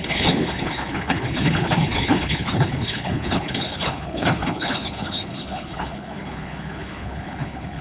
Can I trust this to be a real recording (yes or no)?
no